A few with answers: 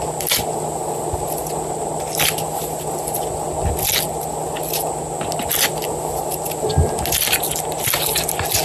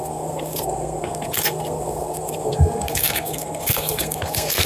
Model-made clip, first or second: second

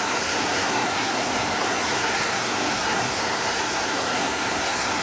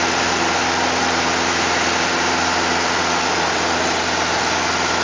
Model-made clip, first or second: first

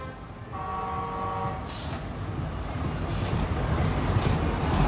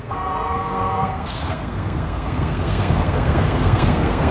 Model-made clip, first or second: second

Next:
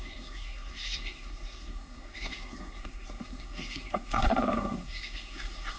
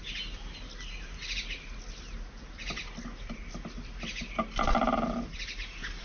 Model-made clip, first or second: first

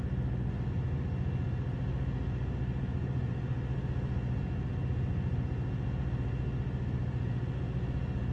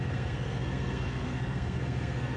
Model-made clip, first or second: second